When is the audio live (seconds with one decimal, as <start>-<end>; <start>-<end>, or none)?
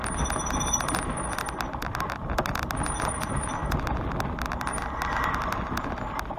0.0-6.4